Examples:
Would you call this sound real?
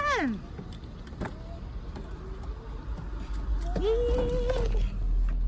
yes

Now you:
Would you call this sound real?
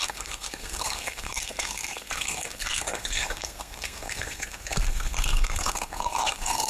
no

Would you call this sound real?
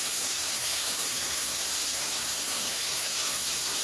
no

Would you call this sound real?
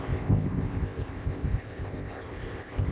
no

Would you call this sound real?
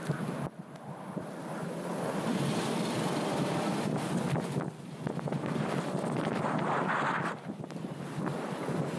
yes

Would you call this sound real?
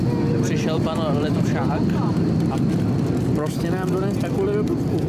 yes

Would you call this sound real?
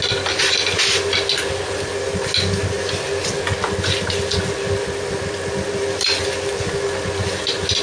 yes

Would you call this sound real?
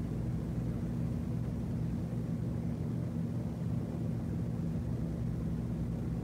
yes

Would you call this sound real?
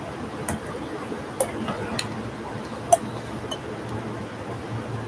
yes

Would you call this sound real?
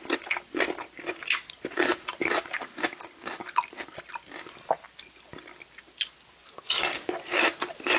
yes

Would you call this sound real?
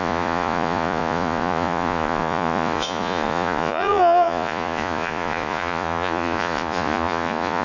no